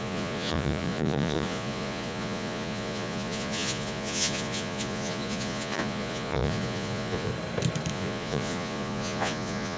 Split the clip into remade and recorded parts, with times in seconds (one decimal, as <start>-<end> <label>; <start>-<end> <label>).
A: 0.0-7.3 remade; 7.3-7.9 recorded; 7.9-9.8 remade